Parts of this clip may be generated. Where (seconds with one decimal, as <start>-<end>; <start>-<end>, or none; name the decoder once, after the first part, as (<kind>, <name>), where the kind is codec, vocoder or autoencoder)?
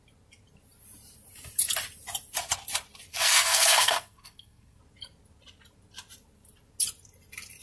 3.1-4.8 (codec, SNAC)